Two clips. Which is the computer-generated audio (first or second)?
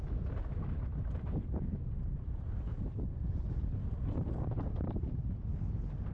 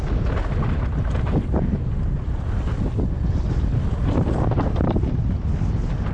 first